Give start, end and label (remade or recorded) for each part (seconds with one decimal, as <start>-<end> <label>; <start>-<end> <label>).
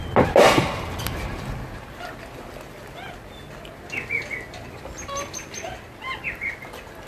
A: 0.0-7.1 recorded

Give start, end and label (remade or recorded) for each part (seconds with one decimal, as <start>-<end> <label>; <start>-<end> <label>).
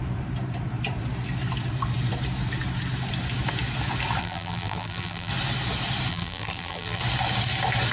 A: 0.0-4.2 recorded; 4.2-5.3 remade; 5.3-6.1 recorded; 6.1-7.0 remade; 7.0-7.9 recorded